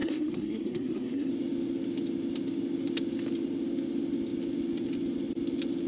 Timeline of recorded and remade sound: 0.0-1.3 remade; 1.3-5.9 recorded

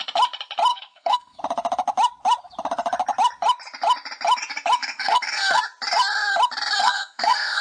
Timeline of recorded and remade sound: 0.0-0.7 recorded; 0.7-1.4 remade; 1.4-4.8 recorded; 4.8-5.6 remade; 5.6-6.8 recorded; 6.8-7.6 remade

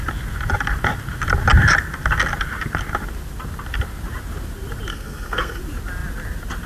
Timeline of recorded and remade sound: 0.0-4.9 recorded; 4.9-5.6 remade; 5.6-6.7 recorded

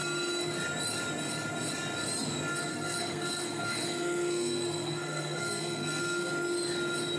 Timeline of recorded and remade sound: 0.0-2.7 recorded; 2.7-6.3 remade; 6.3-7.2 recorded

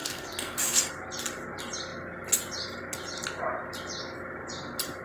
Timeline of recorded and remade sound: 0.0-0.9 remade; 0.9-5.0 recorded

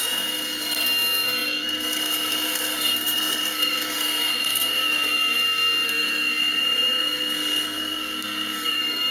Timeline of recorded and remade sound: 0.0-9.1 remade